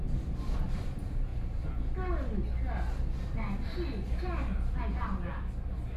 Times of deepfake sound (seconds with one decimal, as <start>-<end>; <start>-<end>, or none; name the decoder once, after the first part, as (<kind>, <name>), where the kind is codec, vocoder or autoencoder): none